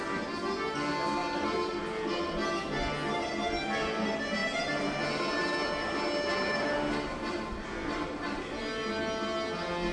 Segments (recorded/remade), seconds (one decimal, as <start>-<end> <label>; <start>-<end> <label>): 0.0-1.2 recorded; 1.2-2.1 remade; 2.1-4.4 recorded; 4.4-8.4 remade; 8.4-9.9 recorded